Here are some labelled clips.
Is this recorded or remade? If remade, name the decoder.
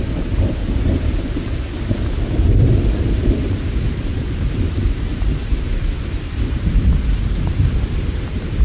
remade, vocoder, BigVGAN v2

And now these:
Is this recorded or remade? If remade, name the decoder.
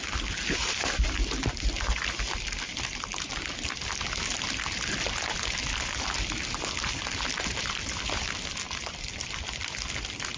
recorded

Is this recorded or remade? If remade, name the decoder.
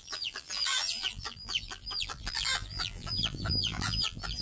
remade, vocoder, BigVGAN v2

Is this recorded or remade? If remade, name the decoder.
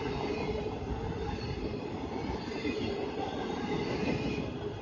remade, vocoder, BigVGAN v2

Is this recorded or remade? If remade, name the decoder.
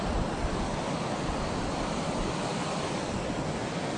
recorded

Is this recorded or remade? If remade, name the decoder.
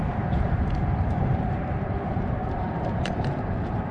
remade, vocoder, BigVGAN v2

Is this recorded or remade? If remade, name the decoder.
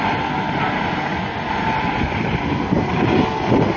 recorded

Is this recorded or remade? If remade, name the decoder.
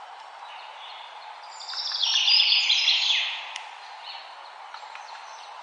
recorded